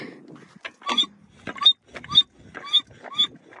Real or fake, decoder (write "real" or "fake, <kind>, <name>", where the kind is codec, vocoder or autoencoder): real